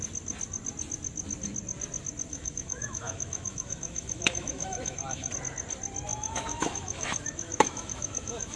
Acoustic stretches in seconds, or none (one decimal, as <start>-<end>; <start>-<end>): 0.0-2.3; 5.3-6.1